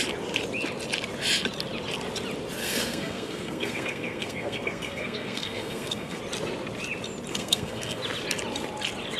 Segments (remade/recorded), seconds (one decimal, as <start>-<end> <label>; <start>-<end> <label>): 0.0-2.6 recorded; 2.6-6.2 remade; 6.2-7.3 recorded; 7.3-8.0 remade; 8.0-9.2 recorded